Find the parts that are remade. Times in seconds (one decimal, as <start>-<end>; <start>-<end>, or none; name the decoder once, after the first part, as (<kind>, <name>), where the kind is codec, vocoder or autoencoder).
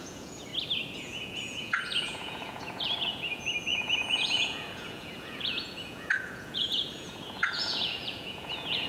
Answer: 0.0-0.5 (vocoder, Vocos); 1.0-8.9